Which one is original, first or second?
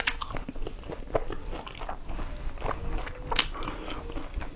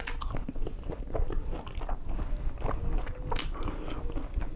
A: first